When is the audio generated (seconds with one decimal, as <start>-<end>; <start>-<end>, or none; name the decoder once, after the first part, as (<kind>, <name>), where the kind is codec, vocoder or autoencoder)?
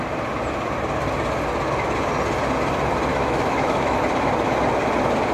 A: 3.1-4.0 (autoencoder, DAC-VAE)